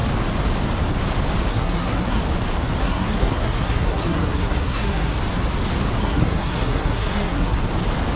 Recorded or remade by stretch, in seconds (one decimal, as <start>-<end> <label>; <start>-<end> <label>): 0.0-1.5 recorded; 1.5-2.2 remade; 2.2-2.8 recorded; 2.8-5.1 remade; 5.1-6.0 recorded; 6.0-7.6 remade; 7.6-8.2 recorded